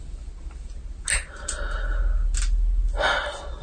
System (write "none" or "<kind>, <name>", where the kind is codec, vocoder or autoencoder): none